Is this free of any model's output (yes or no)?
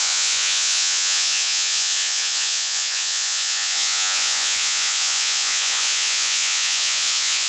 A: no